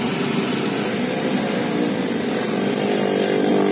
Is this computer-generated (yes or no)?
no